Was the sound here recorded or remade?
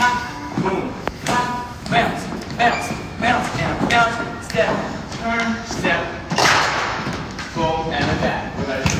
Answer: remade